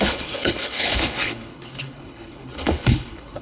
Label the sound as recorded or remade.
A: remade